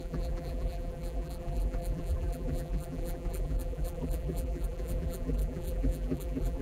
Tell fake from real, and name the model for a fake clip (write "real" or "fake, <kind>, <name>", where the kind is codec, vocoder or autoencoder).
fake, vocoder, BigVGAN v2